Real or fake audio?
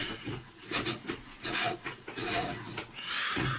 fake